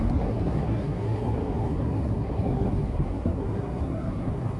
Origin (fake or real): fake